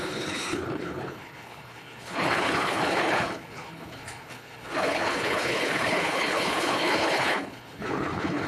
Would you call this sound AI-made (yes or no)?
yes